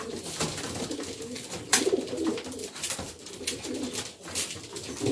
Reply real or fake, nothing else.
real